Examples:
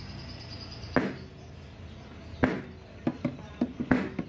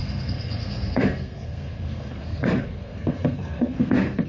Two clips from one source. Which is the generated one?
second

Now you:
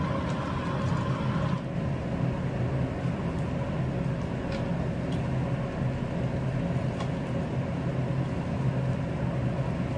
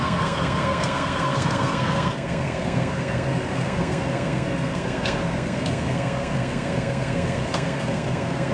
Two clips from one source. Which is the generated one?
second